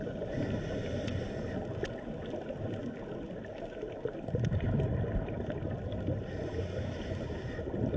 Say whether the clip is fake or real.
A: real